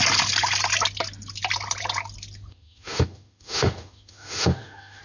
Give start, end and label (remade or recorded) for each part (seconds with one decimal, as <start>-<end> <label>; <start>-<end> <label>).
0.0-2.5 recorded; 2.5-5.0 remade